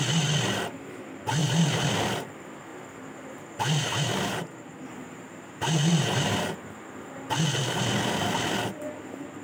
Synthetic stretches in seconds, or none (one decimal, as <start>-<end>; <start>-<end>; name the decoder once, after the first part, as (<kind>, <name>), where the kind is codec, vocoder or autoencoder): 1.4-1.9 (vocoder, BigVGAN v2); 2.7-6.4